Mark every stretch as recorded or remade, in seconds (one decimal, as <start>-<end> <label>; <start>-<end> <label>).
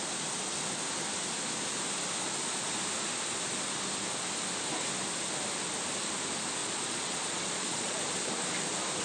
0.0-6.6 recorded; 6.6-8.0 remade; 8.0-9.0 recorded